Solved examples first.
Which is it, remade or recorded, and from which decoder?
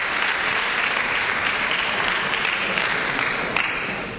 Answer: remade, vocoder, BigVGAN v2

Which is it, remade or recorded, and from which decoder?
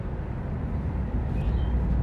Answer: recorded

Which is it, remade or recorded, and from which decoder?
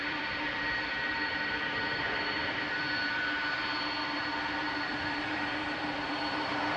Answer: remade, vocoder, BigVGAN v2